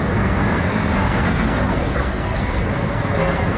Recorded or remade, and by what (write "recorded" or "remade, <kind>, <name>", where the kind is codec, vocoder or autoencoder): remade, codec, SNAC